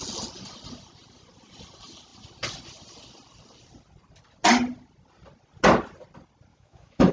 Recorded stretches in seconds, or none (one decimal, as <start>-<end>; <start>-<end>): 0.0-6.5